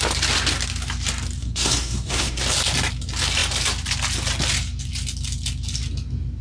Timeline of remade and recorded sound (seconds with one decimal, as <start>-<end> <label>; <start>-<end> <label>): 0.0-1.4 recorded; 1.4-2.4 remade; 2.4-6.4 recorded